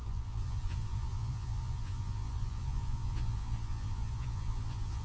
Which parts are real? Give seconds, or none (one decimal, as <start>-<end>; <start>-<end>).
none